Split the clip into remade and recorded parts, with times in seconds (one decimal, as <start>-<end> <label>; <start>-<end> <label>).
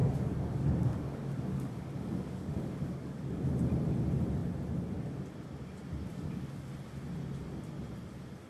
0.0-3.5 remade; 3.5-6.1 recorded; 6.1-6.7 remade; 6.7-8.5 recorded